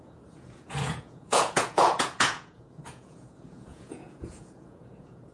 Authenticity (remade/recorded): remade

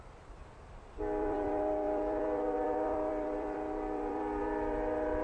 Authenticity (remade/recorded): remade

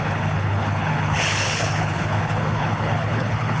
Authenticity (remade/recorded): remade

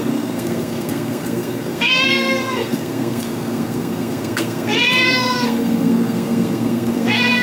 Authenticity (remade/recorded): remade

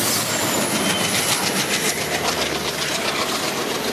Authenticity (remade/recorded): recorded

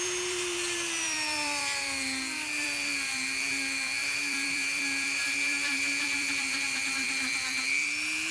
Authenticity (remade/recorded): remade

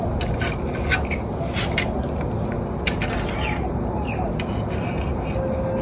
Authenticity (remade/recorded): recorded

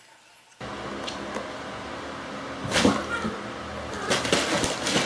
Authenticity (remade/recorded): recorded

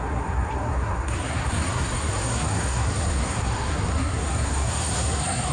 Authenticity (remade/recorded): remade